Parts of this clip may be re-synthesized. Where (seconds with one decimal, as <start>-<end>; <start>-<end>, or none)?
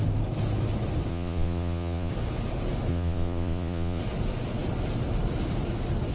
1.1-2.1; 2.9-4.0